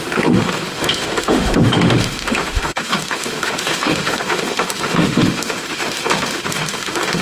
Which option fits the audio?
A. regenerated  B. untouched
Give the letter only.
A